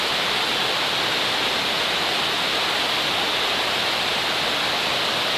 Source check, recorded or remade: recorded